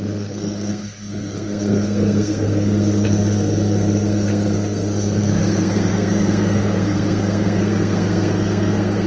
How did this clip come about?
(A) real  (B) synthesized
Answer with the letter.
B